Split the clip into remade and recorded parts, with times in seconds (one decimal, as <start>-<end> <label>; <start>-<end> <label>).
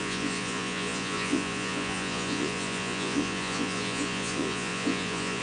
0.0-5.4 remade